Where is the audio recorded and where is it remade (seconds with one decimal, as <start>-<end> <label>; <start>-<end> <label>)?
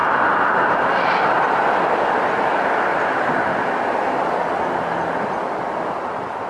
0.0-6.5 recorded